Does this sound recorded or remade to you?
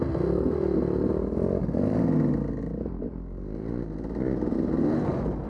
recorded